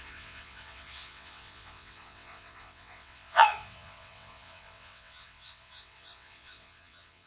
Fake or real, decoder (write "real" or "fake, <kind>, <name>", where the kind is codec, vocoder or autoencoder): fake, vocoder, WaveNeXt